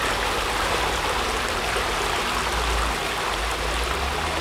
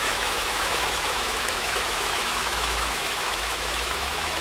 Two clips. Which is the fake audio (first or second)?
second